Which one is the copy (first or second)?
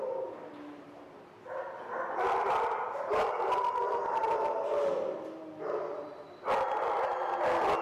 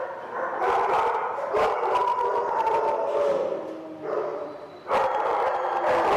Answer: second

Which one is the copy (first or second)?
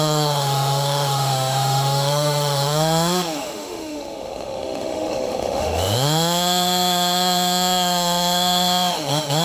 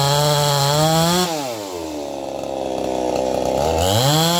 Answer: first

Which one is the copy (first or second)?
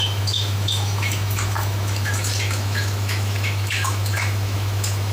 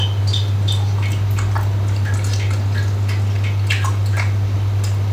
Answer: first